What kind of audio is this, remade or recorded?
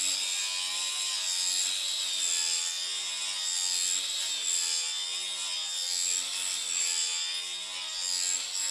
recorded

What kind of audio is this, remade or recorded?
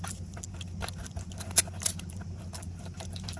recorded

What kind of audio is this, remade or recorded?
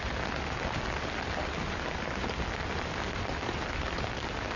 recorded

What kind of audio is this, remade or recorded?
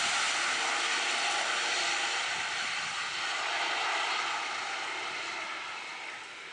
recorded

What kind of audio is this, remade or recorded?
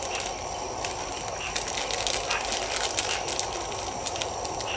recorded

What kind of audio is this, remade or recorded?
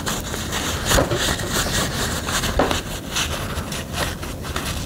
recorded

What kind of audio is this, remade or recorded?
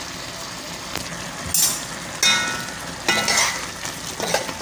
recorded